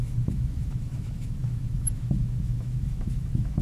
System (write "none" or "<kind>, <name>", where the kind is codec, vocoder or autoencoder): autoencoder, DAC-VAE